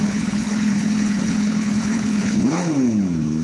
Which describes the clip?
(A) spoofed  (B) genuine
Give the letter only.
A